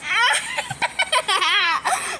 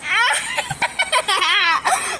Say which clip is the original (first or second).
second